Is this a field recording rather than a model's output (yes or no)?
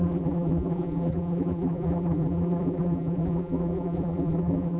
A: no